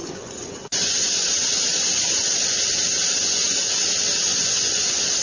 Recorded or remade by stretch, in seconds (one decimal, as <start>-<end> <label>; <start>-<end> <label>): 0.0-1.3 remade; 1.3-3.2 recorded; 3.2-3.8 remade; 3.8-4.3 recorded; 4.3-4.8 remade; 4.8-5.2 recorded